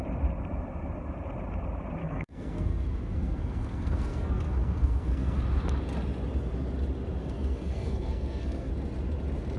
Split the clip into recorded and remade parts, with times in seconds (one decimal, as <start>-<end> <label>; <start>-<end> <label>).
0.0-2.0 recorded; 2.0-5.4 remade; 5.4-7.2 recorded; 7.2-8.7 remade; 8.7-9.6 recorded

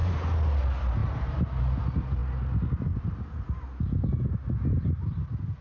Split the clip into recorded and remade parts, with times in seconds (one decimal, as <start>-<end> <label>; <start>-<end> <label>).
0.0-5.6 recorded

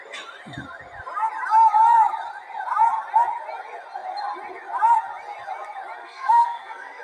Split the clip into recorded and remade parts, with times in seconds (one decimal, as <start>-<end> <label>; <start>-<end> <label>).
0.0-6.0 recorded; 6.0-7.0 remade